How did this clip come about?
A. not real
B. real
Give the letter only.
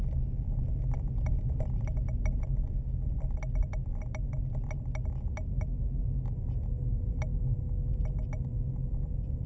B